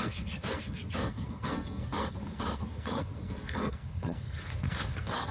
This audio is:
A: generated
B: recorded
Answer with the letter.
A